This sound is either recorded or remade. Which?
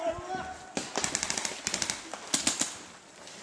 recorded